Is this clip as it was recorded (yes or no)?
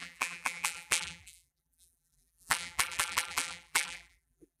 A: no